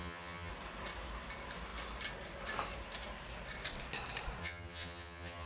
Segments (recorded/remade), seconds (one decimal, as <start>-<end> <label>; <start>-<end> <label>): 0.0-0.5 remade; 0.5-4.4 recorded; 4.4-5.5 remade